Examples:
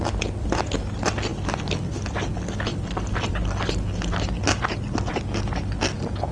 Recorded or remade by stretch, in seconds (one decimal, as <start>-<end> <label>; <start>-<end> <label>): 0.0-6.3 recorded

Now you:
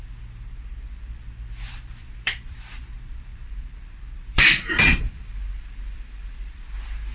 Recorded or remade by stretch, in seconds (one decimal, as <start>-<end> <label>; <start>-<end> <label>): 0.0-7.1 remade

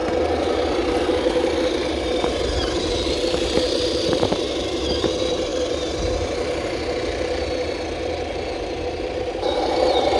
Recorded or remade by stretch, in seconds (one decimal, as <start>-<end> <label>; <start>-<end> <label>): 0.0-0.7 recorded; 0.7-5.5 remade; 5.5-8.9 recorded; 8.9-10.2 remade

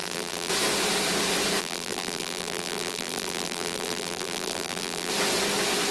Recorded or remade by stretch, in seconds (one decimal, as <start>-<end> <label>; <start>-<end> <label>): 0.0-0.5 remade; 0.5-1.6 recorded; 1.6-5.1 remade; 5.1-5.9 recorded

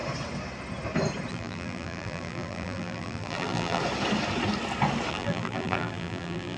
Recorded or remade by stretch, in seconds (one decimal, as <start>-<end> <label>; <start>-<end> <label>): 0.0-1.3 recorded; 1.3-3.8 remade; 3.8-5.1 recorded; 5.1-6.6 remade